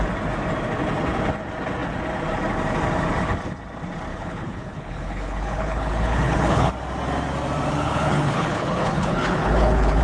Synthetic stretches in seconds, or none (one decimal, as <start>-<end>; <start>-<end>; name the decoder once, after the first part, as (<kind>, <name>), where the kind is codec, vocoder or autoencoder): 4.1-6.7 (codec, HILCodec); 7.7-10.0